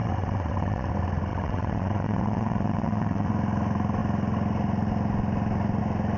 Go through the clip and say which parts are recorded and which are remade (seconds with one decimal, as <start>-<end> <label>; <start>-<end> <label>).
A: 0.0-0.9 remade; 0.9-1.3 recorded; 1.3-3.3 remade; 3.3-6.2 recorded

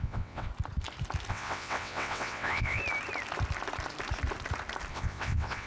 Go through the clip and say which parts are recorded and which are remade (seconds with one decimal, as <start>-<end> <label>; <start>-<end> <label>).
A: 0.0-0.5 remade; 0.5-1.3 recorded; 1.3-2.8 remade; 2.8-4.9 recorded; 4.9-5.7 remade

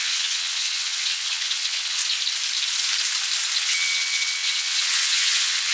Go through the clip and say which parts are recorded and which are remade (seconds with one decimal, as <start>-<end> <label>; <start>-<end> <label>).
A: 0.0-2.0 remade; 2.0-3.6 recorded; 3.6-5.7 remade